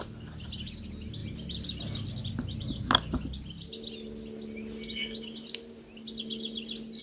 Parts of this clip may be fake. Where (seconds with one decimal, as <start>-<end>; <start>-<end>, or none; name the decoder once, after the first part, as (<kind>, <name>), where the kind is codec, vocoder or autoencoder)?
none